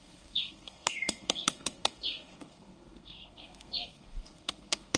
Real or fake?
fake